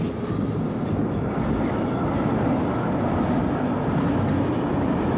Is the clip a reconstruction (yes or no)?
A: no